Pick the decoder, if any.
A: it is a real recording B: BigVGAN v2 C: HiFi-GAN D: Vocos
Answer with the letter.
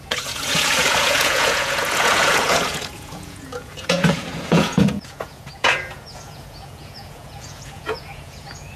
D